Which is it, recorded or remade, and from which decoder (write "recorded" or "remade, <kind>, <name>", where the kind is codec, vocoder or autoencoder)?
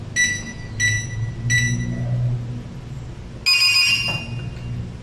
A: recorded